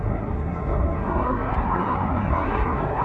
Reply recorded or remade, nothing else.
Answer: remade